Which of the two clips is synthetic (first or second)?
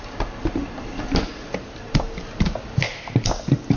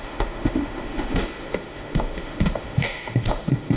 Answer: second